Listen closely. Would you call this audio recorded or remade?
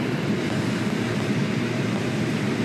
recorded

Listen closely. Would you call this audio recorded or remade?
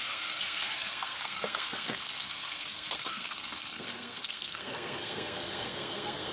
remade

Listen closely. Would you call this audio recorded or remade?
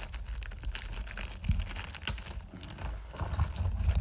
recorded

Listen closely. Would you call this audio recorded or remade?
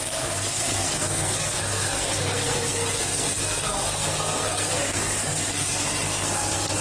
remade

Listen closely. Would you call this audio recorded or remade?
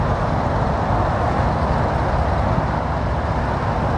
recorded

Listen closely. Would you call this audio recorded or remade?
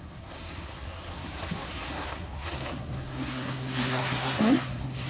remade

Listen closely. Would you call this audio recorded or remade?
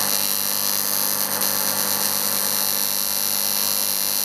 recorded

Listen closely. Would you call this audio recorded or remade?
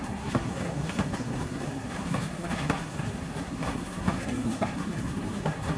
remade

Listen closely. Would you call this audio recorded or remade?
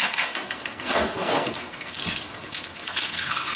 remade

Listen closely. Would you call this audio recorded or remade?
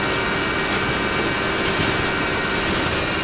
recorded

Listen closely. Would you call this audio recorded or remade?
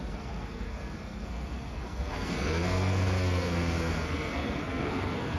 remade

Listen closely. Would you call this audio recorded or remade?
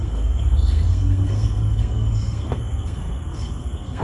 remade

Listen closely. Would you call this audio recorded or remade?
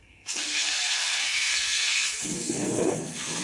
remade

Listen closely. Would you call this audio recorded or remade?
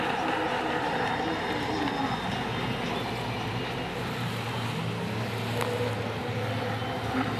recorded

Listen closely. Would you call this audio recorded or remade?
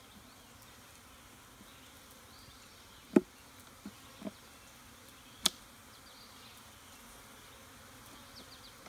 recorded